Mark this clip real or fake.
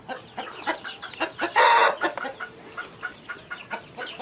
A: real